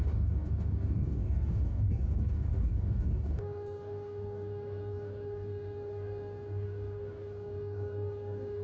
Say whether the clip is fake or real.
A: fake